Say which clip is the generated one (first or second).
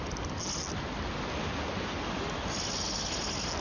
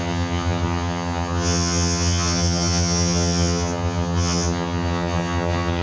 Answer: second